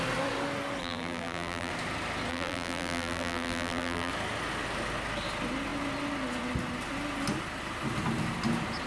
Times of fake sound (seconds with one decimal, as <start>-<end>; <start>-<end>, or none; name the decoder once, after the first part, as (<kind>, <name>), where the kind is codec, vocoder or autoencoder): 0.8-1.7 (vocoder, BigVGAN v2); 2.3-4.1